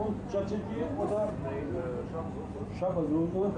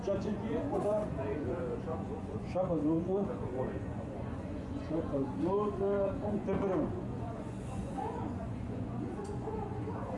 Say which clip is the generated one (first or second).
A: second